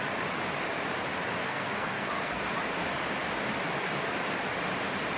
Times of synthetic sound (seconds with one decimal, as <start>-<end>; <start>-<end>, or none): 1.4-2.4